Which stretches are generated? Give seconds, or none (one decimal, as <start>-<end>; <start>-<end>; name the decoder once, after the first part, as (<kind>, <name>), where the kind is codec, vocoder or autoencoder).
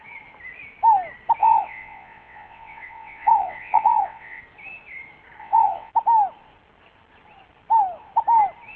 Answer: 1.4-4.4 (vocoder, WaveNeXt); 5.4-5.9